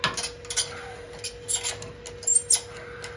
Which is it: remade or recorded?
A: recorded